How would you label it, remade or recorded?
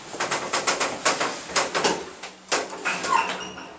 recorded